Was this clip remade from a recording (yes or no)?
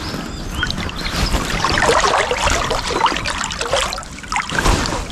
no